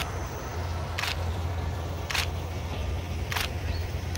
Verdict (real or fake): fake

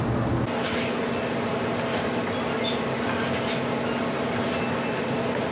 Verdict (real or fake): real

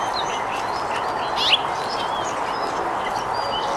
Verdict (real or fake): real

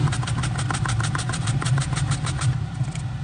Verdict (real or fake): real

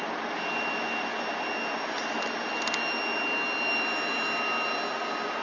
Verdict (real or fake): real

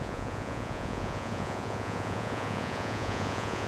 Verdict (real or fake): fake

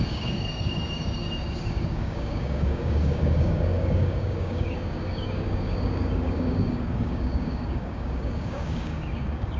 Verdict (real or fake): fake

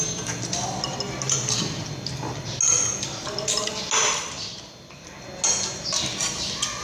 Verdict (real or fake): real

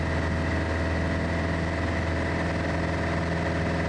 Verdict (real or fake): real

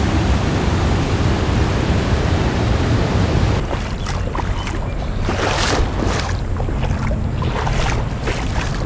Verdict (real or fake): real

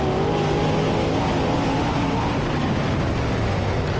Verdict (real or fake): real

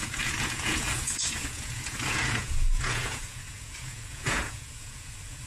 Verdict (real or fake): fake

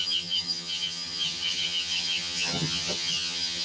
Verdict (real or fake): fake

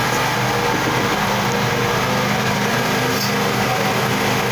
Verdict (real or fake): real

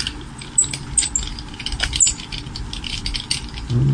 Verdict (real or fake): real